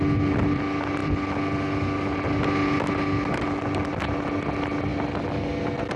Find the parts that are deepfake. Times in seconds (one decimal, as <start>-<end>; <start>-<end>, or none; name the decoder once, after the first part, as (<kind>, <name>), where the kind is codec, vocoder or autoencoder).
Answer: none